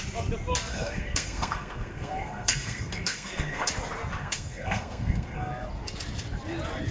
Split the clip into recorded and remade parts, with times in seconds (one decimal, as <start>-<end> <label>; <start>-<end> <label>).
0.0-0.7 recorded; 0.7-3.7 remade; 3.7-4.2 recorded; 4.2-5.5 remade; 5.5-6.9 recorded